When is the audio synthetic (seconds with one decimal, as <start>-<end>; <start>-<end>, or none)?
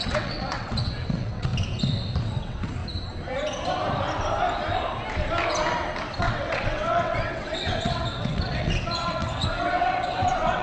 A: 0.0-1.5; 2.2-2.8; 6.2-10.6